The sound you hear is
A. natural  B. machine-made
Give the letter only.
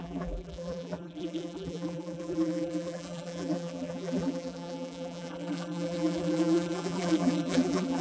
B